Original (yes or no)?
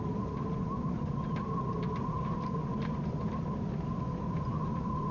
yes